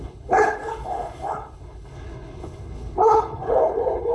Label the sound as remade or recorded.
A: remade